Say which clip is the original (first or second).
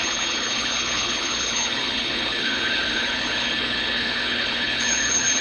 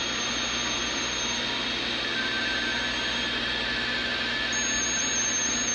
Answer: second